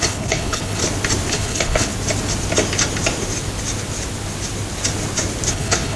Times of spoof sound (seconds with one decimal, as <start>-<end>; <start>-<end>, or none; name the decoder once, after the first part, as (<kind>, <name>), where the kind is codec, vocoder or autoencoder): 0.0-0.8 (codec, HILCodec); 1.3-1.9; 5.5-6.0